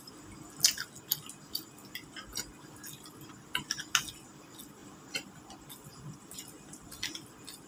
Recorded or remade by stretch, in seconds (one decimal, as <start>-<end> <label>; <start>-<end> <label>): 0.0-7.7 recorded

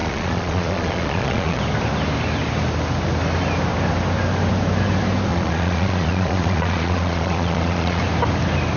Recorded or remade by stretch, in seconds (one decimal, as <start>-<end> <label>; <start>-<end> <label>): 0.0-1.6 remade; 1.6-5.3 recorded; 5.3-8.0 remade; 8.0-8.8 recorded

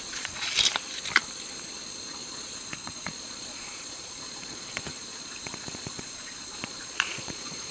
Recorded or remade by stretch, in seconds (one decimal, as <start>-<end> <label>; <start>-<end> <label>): 0.0-0.5 remade; 0.5-2.0 recorded; 2.0-7.7 remade

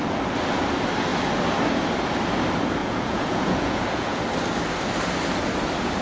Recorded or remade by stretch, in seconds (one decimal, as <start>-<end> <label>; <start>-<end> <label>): 0.0-2.8 recorded; 2.8-4.2 remade; 4.2-6.0 recorded

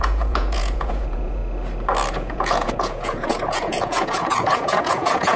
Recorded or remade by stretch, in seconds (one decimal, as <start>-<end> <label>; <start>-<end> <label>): 0.0-1.4 remade; 1.4-2.1 recorded; 2.1-5.4 remade